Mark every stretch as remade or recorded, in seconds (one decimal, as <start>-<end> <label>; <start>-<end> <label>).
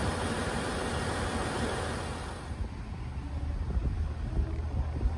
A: 0.0-5.2 recorded